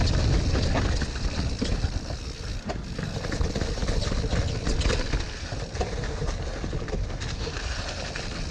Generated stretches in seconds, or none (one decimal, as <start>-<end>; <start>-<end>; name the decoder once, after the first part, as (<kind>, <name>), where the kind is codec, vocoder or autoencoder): none